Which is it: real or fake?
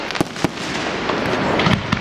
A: fake